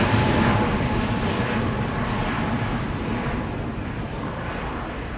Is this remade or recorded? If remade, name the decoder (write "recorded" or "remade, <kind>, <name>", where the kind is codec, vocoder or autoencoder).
remade, vocoder, BigVGAN v2